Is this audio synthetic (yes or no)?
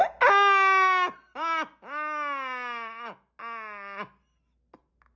no